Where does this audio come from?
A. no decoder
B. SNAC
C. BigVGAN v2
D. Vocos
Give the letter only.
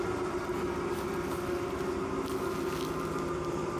A